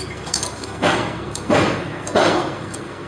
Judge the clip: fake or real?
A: fake